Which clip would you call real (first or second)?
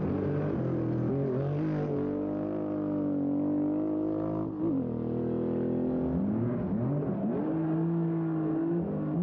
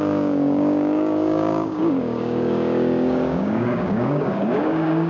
first